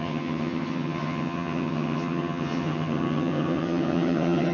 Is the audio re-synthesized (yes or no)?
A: yes